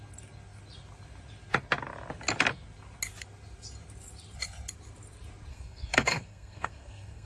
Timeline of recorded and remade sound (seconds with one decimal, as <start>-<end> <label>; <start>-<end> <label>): 0.0-5.5 recorded; 5.5-7.3 remade